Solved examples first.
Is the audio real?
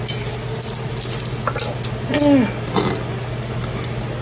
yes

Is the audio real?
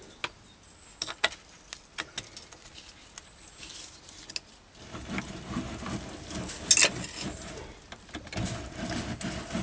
yes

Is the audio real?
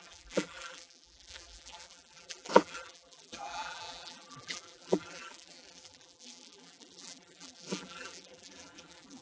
no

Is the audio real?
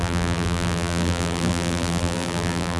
no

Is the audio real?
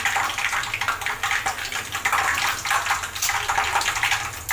yes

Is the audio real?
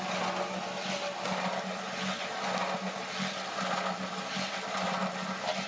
yes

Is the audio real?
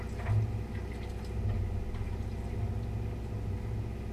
yes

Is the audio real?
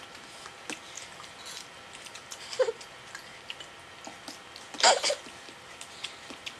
yes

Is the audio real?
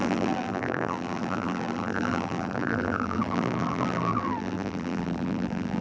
no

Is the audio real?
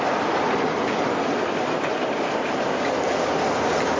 yes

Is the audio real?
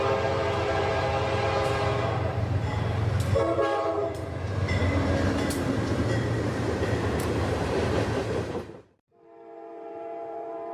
no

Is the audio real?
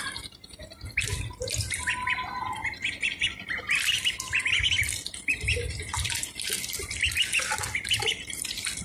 yes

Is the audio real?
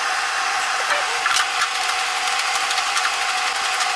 yes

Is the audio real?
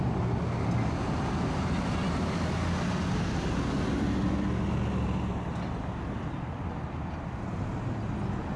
yes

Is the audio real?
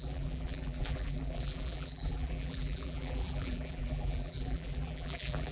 no